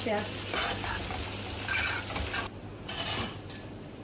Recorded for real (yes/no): yes